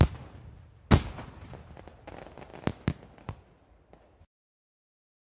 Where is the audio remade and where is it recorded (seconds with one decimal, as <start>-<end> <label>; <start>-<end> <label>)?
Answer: 0.0-5.3 recorded